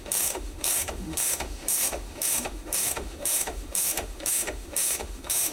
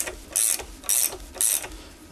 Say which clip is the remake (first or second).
first